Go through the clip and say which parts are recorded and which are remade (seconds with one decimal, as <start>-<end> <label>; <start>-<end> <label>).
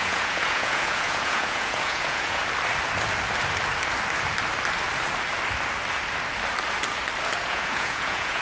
0.0-2.4 remade; 2.4-7.4 recorded; 7.4-8.4 remade